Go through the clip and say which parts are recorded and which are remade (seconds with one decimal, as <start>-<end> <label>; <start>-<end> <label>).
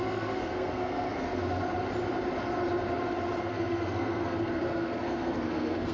0.0-1.4 remade; 1.4-3.4 recorded; 3.4-5.9 remade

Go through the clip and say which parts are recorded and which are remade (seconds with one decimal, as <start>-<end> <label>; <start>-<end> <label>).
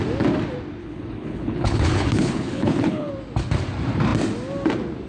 0.0-0.8 recorded; 0.8-3.1 remade; 3.1-5.1 recorded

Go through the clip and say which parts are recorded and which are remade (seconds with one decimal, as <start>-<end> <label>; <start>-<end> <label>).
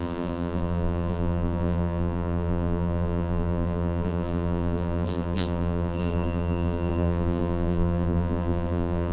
0.0-9.1 remade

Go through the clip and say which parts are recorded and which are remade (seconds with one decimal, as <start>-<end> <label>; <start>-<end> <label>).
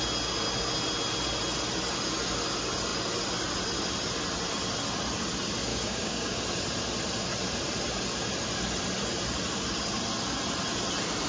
0.0-5.7 recorded; 5.7-6.4 remade; 6.4-11.3 recorded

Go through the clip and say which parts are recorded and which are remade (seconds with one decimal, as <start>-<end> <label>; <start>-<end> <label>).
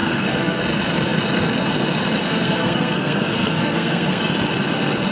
0.0-0.6 remade; 0.6-2.2 recorded; 2.2-4.3 remade; 4.3-5.1 recorded